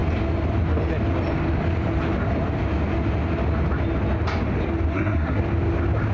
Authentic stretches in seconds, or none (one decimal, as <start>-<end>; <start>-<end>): 0.0-4.9; 5.4-6.1